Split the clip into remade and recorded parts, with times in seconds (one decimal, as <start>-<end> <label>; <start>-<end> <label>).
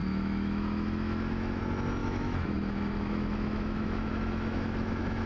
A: 0.0-1.6 remade; 1.6-2.0 recorded; 2.0-5.3 remade